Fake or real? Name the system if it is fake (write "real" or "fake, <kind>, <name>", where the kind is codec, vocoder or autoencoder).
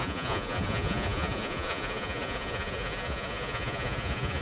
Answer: fake, vocoder, Vocos